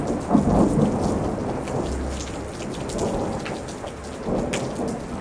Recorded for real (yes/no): yes